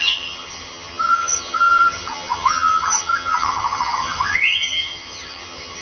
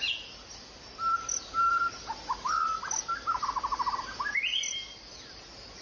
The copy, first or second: first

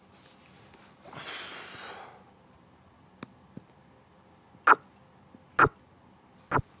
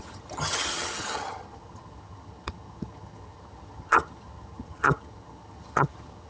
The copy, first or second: second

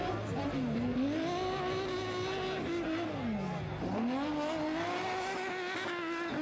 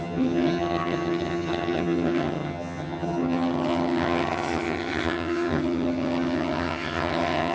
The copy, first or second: second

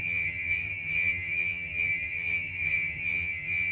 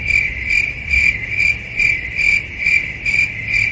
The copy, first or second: first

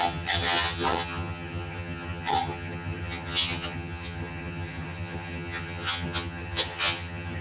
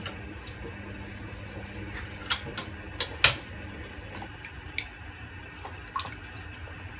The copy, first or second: first